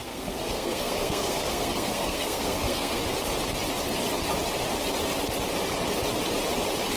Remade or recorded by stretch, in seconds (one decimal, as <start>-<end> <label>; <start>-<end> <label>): 0.0-3.0 remade; 3.0-7.0 recorded